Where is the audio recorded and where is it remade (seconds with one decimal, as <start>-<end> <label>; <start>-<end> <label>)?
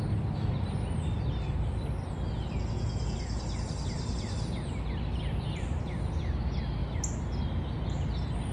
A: 0.0-8.5 recorded